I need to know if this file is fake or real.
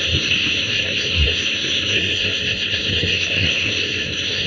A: fake